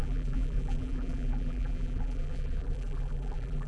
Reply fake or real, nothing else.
fake